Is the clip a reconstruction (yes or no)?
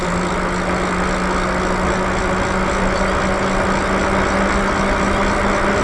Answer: no